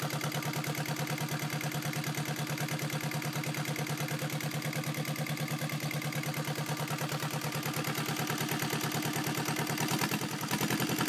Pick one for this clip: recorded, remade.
recorded